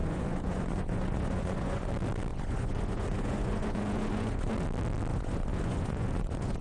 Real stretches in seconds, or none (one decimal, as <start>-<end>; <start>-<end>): 1.9-2.3; 4.5-5.1